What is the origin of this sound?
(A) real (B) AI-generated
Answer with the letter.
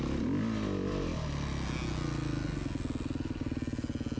A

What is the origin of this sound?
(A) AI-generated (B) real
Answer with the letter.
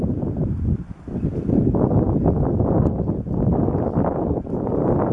B